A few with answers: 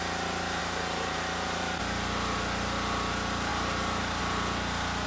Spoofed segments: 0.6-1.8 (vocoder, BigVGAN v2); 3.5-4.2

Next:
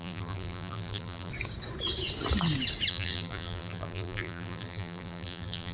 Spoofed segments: 0.0-1.3 (vocoder, BigVGAN v2); 2.9-5.7

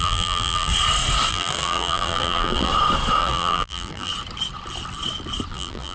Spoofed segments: 0.0-0.7 (vocoder, BigVGAN v2); 1.3-2.7; 3.2-4.1; 5.5-5.9

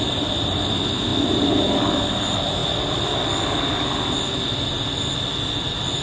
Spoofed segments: none

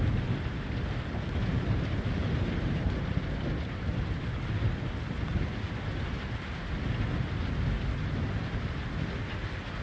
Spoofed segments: 2.2-2.8 (vocoder, BigVGAN v2)

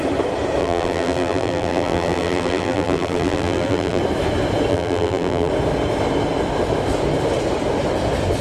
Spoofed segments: 0.6-4.0 (vocoder, BigVGAN v2); 4.7-5.5

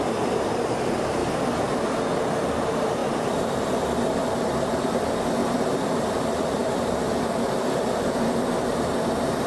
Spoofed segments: 0.0-1.2 (vocoder, BigVGAN v2); 2.5-5.4; 6.0-9.5

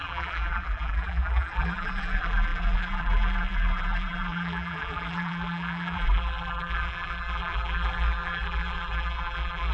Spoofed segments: 0.0-9.7 (vocoder, BigVGAN v2)